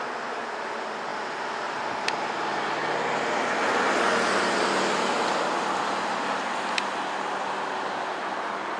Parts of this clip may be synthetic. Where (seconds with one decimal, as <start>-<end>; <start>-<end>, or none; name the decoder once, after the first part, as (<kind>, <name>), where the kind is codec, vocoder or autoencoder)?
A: none